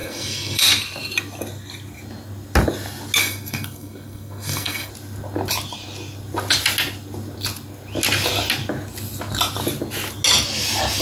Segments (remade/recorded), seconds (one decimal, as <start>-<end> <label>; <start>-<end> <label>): 0.0-0.6 remade; 0.6-3.2 recorded; 3.2-4.9 remade; 4.9-11.0 recorded